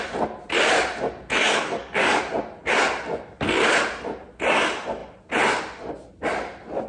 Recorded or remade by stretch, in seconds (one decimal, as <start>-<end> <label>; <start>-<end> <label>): 0.0-1.4 recorded; 1.4-2.2 remade; 2.2-6.9 recorded